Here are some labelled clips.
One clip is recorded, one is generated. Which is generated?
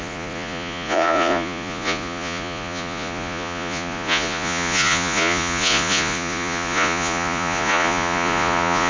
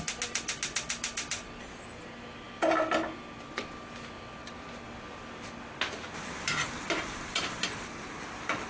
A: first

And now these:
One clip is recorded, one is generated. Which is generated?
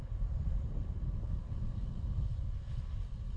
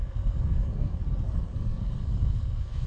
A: second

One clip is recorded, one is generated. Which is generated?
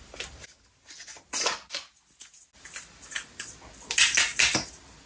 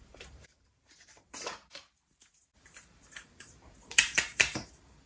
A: second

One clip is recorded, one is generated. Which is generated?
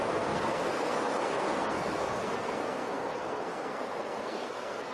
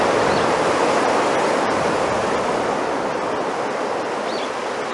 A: first